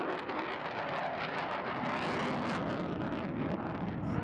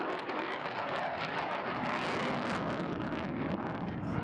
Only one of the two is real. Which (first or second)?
first